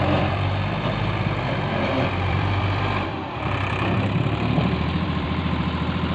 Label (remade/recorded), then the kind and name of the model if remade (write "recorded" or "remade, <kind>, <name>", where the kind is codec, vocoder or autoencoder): remade, vocoder, BigVGAN v2